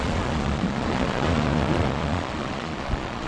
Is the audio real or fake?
fake